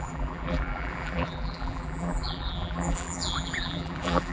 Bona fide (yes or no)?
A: no